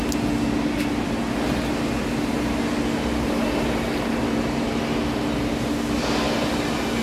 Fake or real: real